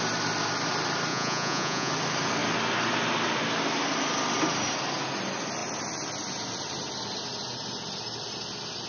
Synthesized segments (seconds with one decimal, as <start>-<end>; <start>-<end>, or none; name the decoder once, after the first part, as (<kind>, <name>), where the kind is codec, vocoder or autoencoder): 1.1-1.9 (vocoder, Vocos)